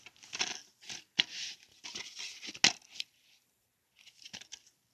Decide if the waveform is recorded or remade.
recorded